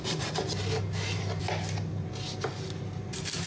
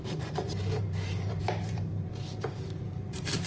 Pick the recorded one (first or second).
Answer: first